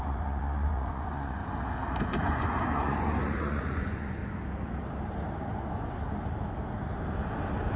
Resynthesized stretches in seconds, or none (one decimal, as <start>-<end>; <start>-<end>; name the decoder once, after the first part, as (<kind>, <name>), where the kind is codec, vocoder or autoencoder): 0.0-1.4 (vocoder, Vocos); 2.0-4.2